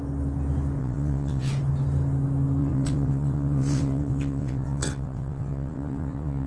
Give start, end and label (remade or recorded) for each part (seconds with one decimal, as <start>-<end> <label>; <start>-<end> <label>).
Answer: 0.0-0.8 recorded; 0.8-1.5 remade; 1.5-2.6 recorded; 2.6-6.5 remade